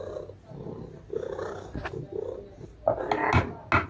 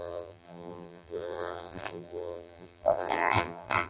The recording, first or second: first